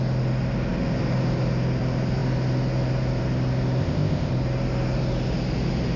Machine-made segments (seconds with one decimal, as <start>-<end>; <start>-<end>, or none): 3.8-4.3